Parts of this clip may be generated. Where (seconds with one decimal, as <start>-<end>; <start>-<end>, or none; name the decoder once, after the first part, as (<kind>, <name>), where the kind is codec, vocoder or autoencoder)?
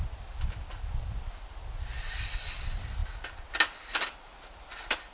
none